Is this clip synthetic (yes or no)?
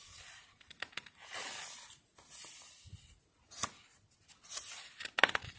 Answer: no